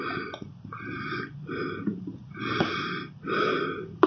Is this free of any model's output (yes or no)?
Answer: yes